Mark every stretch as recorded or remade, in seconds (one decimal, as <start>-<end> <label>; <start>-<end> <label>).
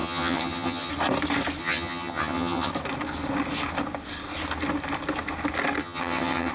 0.0-0.9 remade; 0.9-1.6 recorded; 1.6-2.7 remade; 2.7-5.8 recorded; 5.8-6.5 remade